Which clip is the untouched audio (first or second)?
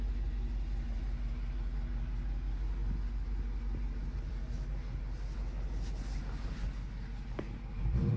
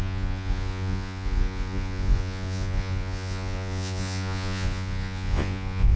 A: first